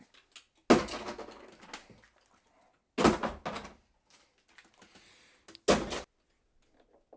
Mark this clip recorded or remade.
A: recorded